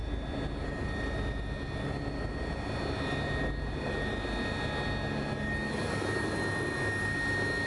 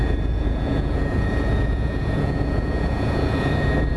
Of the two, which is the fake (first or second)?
second